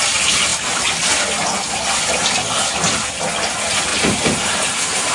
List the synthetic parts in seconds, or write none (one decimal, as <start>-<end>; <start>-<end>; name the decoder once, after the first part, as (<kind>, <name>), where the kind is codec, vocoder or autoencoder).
none